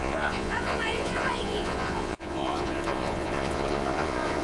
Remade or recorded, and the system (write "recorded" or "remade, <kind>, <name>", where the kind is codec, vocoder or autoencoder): remade, vocoder, Vocos